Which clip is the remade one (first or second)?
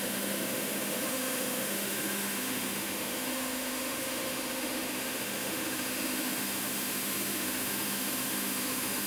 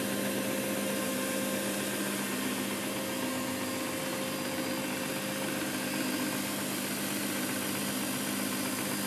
first